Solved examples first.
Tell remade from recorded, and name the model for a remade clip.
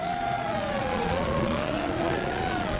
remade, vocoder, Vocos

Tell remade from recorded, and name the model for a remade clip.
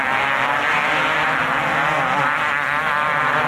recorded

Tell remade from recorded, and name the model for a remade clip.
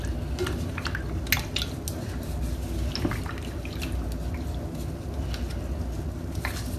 recorded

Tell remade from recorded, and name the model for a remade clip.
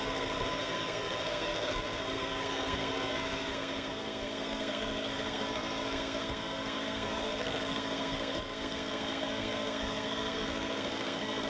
remade, codec, SNAC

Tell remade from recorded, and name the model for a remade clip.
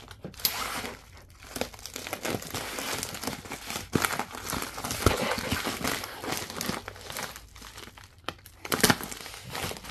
recorded